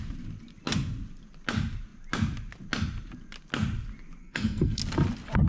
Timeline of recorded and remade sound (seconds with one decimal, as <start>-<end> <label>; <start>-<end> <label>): 0.0-4.2 recorded; 4.2-4.8 remade; 4.8-5.5 recorded